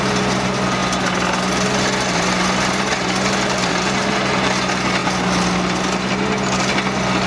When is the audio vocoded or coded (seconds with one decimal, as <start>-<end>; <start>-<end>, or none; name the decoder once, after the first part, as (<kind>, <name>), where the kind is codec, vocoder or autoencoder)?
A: none